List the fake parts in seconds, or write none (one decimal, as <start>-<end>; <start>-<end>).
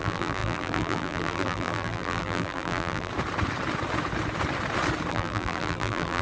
0.0-3.1; 5.1-6.2